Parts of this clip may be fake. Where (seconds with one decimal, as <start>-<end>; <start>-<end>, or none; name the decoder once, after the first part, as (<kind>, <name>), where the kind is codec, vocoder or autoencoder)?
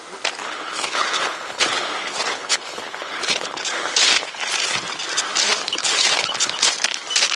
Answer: 0.4-4.4 (codec, HILCodec); 5.6-6.7